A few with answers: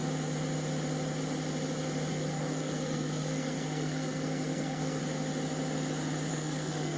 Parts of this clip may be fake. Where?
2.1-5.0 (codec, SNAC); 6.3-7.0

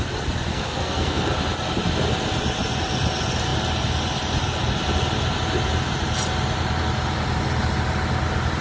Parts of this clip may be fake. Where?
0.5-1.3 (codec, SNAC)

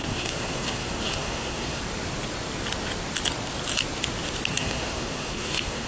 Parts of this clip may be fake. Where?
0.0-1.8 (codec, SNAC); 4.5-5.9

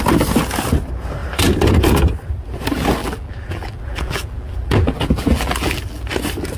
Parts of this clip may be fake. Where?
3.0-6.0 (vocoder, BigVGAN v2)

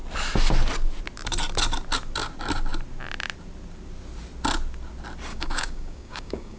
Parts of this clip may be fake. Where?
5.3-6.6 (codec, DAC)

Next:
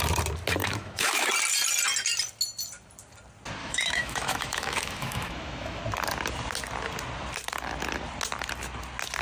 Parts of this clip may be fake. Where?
0.6-1.3 (autoencoder, DAC-VAE); 3.6-5.8

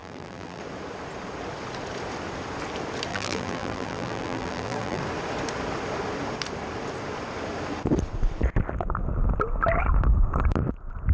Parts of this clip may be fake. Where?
0.0-0.6 (vocoder, BigVGAN v2); 3.1-5.0